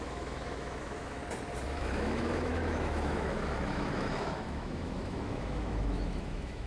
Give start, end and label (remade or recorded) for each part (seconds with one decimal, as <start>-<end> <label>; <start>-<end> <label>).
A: 0.0-1.2 remade; 1.2-1.7 recorded; 1.7-6.7 remade